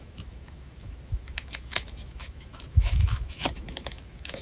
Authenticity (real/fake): fake